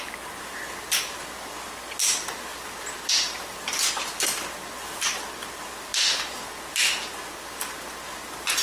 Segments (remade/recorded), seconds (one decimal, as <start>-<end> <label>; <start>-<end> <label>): 0.0-2.5 recorded; 2.5-3.9 remade; 3.9-8.6 recorded